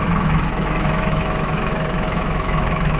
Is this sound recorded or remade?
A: remade